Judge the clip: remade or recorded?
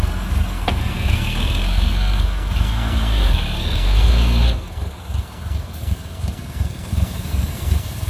remade